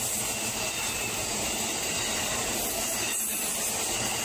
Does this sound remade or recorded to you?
recorded